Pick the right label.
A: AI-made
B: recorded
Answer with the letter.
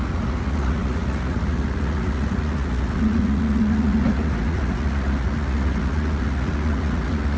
A